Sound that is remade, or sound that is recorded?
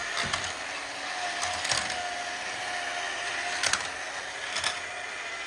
recorded